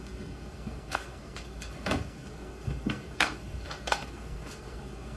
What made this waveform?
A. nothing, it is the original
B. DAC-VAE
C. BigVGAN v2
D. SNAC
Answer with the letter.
D